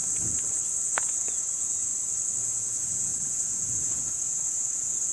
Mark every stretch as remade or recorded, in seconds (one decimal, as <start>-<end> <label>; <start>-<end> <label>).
0.0-0.8 recorded; 0.8-1.9 remade; 1.9-2.4 recorded; 2.4-5.1 remade